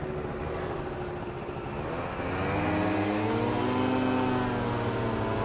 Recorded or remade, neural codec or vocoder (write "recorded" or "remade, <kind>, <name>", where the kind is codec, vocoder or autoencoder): recorded